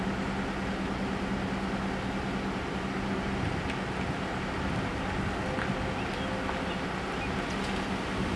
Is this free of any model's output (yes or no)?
yes